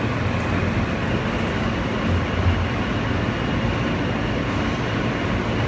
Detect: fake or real real